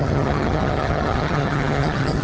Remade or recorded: remade